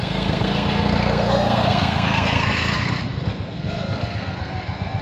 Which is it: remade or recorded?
remade